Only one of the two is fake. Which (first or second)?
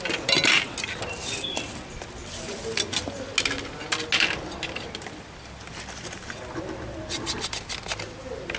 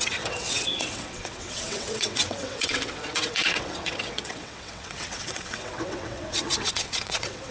second